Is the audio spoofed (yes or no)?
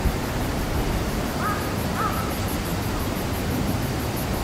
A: no